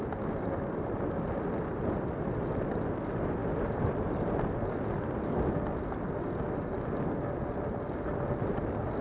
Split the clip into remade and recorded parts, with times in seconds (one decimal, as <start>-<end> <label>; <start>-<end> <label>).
0.0-9.0 recorded